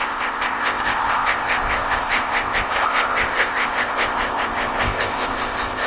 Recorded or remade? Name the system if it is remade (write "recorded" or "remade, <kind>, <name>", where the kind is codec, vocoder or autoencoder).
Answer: remade, codec, ZipCodec